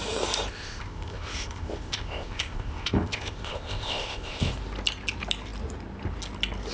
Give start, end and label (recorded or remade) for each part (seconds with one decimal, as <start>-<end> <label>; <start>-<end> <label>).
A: 0.0-0.5 recorded; 0.5-4.5 remade; 4.5-6.7 recorded